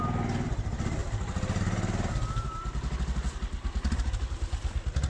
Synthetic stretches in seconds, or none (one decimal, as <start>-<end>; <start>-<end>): none